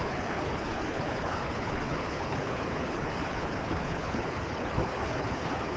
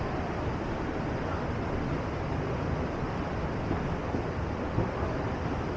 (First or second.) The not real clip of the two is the first